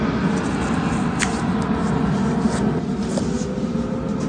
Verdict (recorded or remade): recorded